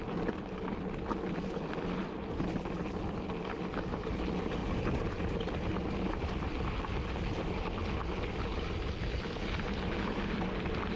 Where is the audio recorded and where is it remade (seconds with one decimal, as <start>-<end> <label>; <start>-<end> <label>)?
0.0-4.6 recorded; 4.6-5.7 remade; 5.7-11.0 recorded